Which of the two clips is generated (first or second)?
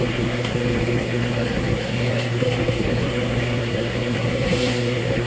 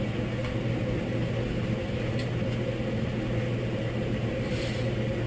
first